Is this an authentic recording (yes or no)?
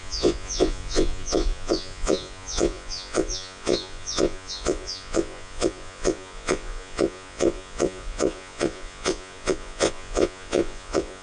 no